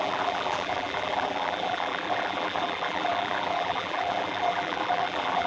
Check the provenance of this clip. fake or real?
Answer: fake